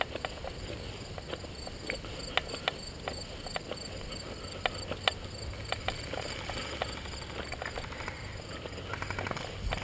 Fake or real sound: real